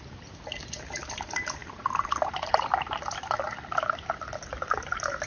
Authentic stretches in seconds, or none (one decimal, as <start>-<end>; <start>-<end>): 0.0-1.6; 2.6-5.3